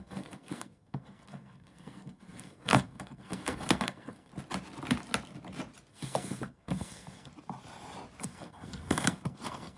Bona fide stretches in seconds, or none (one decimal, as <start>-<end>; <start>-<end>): 4.3-5.9; 7.3-8.2